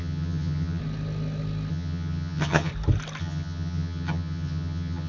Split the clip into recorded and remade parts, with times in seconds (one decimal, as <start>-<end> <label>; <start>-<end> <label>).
0.0-0.8 remade; 0.8-1.7 recorded; 1.7-2.7 remade; 2.7-3.2 recorded; 3.2-5.1 remade